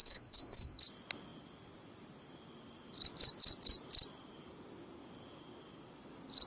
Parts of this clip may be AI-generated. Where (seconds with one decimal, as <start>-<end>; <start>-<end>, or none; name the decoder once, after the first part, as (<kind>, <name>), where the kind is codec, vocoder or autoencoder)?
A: 0.0-0.8 (codec, DAC)